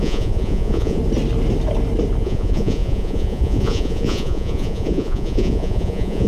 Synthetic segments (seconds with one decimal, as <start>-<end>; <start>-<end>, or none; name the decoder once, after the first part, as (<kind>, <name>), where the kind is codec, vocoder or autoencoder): 0.0-1.0 (vocoder, Vocos); 2.2-6.3